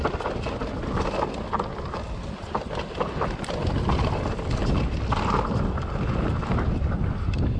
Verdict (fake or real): real